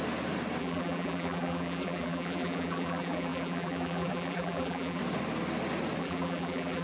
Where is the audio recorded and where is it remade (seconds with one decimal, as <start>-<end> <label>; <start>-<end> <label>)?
0.0-0.6 recorded; 0.6-5.0 remade; 5.0-6.0 recorded; 6.0-6.8 remade